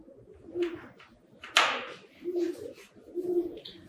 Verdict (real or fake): real